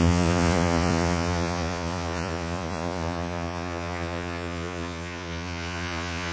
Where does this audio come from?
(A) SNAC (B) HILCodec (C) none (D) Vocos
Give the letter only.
D